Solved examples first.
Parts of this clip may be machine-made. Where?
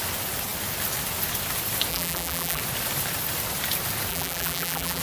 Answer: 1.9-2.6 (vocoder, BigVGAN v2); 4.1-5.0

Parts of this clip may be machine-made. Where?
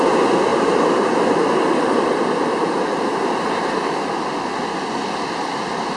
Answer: none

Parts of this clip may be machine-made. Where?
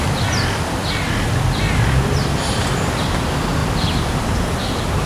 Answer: none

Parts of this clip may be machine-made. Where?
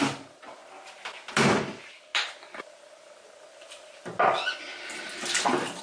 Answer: none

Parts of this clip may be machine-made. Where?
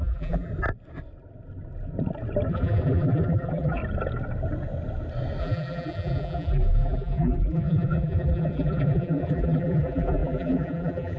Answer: 0.0-0.5 (vocoder, BigVGAN v2); 2.5-3.8; 5.4-11.2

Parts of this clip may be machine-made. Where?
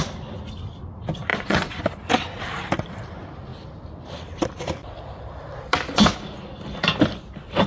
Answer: 1.3-1.8 (vocoder, Vocos)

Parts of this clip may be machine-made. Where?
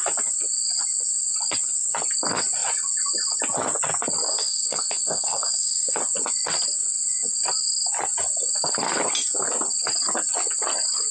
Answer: 4.3-6.0 (codec, SNAC)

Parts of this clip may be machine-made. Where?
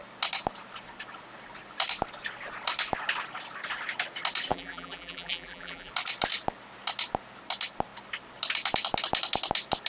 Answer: 4.5-5.9 (vocoder, BigVGAN v2)